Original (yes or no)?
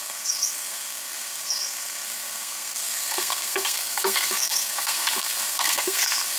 no